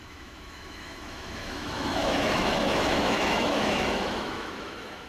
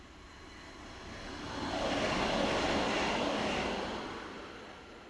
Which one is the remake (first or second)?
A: first